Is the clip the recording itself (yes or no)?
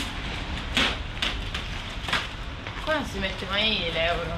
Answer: yes